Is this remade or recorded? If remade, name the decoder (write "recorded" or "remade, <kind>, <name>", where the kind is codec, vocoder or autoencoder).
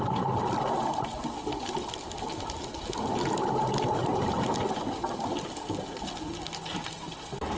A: recorded